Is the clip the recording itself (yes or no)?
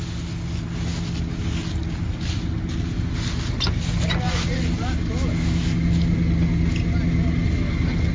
yes